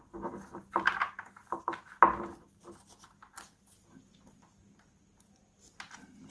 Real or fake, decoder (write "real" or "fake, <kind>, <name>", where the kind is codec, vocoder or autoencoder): real